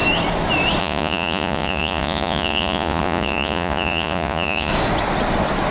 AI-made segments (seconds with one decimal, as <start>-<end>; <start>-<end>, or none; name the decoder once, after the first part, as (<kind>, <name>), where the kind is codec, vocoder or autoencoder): 0.8-4.7 (vocoder, Vocos)

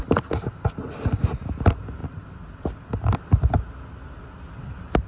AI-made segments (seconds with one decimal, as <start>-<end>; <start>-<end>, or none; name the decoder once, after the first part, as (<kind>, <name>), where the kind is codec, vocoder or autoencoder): none

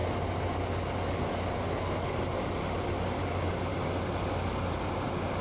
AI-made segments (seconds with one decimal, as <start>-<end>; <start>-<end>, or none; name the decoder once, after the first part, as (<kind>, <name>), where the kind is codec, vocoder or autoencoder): none

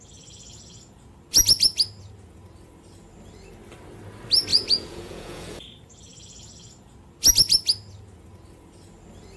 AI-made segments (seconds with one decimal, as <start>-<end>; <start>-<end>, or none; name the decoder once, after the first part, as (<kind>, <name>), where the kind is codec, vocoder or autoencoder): 4.5-5.6 (vocoder, Vocos)